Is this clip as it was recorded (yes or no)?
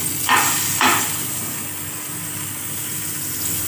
yes